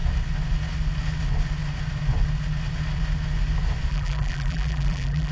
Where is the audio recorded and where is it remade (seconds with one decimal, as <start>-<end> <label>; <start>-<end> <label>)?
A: 0.0-3.9 recorded; 3.9-5.3 remade